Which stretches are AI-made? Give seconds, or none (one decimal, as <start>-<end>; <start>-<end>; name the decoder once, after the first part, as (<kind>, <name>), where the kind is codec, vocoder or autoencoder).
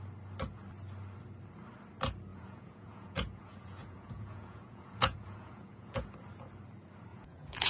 2.3-6.1 (vocoder, Vocos); 7.1-7.7